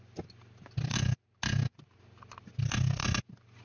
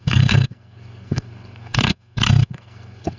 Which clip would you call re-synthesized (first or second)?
second